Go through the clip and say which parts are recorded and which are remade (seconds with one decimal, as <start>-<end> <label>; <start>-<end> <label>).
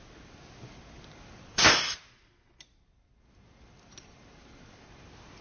0.0-5.4 recorded